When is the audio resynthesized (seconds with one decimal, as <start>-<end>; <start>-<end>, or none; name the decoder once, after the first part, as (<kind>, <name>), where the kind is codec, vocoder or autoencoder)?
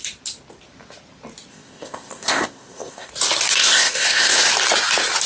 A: 1.5-3.1 (codec, ZipCodec); 3.6-4.5